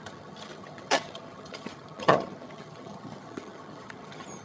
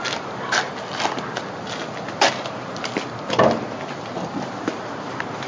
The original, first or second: second